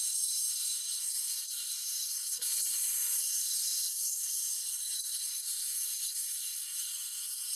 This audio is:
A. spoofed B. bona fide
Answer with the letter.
A